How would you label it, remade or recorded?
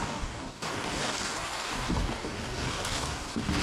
remade